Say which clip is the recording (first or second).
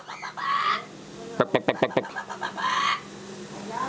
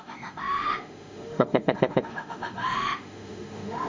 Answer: first